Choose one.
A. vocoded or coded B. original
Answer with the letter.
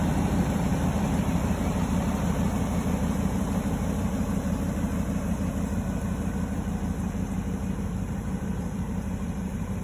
A